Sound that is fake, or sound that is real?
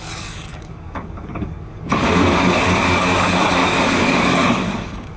fake